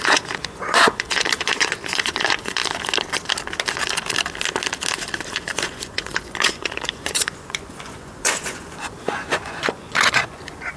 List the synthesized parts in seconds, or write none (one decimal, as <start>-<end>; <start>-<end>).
0.0-2.6; 5.3-10.8